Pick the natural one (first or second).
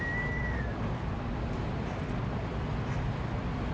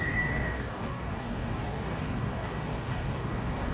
first